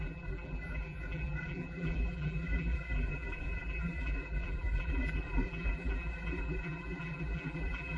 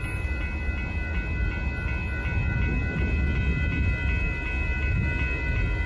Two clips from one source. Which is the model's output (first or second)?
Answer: first